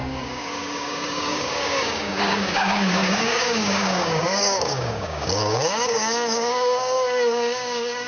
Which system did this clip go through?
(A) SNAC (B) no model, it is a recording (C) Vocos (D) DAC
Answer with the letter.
D